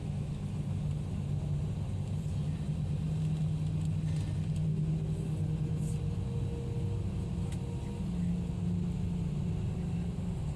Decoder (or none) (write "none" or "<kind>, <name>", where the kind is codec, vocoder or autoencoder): none